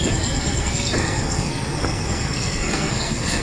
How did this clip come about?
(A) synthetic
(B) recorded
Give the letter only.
A